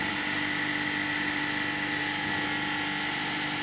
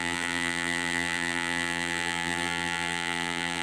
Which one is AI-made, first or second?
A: second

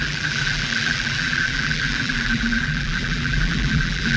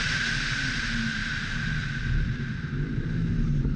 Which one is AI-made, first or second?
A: first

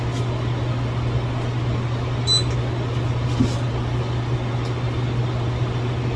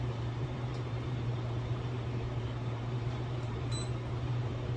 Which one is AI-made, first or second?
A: second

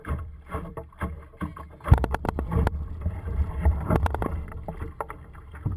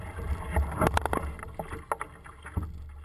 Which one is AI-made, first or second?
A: first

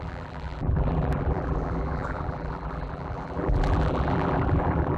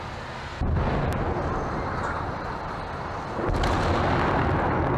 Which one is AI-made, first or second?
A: first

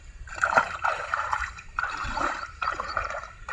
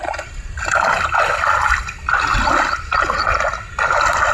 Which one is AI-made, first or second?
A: first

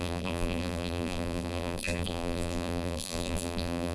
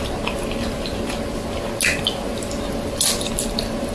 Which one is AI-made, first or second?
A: first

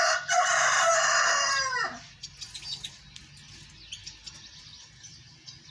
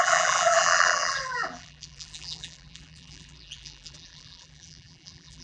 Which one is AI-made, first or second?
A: second